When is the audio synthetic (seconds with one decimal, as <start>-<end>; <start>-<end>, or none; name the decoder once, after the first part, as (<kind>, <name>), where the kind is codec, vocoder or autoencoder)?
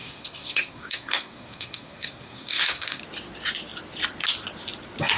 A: 0.0-3.0 (codec, SNAC)